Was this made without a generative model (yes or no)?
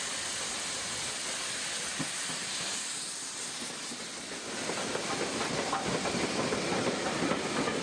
yes